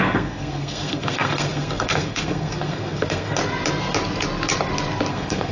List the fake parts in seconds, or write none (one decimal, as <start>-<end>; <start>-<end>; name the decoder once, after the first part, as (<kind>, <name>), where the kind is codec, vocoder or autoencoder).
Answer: 0.0-3.4 (codec, SNAC); 5.1-5.5